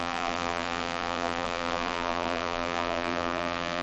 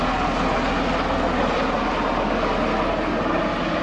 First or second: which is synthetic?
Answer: first